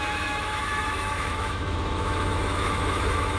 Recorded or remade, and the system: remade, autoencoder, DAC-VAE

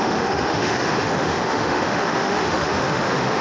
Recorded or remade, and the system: remade, autoencoder, DAC-VAE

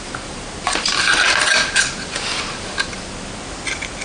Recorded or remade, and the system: recorded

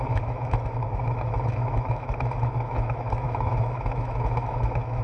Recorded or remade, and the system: remade, autoencoder, DAC-VAE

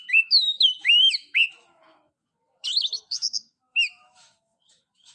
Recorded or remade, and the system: remade, autoencoder, DAC-VAE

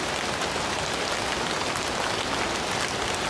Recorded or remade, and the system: recorded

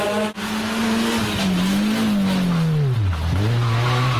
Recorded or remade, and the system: recorded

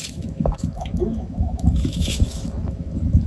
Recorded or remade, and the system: remade, autoencoder, DAC-VAE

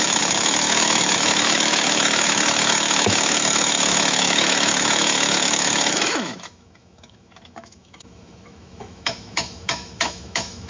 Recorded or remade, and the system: remade, autoencoder, DAC-VAE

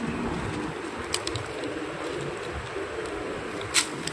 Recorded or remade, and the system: recorded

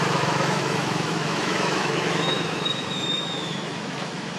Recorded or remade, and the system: remade, autoencoder, DAC-VAE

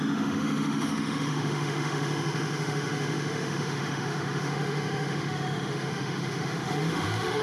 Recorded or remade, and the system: remade, autoencoder, DAC-VAE